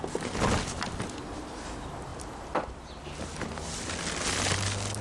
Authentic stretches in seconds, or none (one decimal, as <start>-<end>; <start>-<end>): 0.0-2.1; 3.9-5.0